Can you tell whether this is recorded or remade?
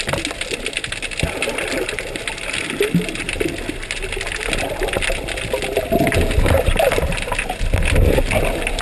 recorded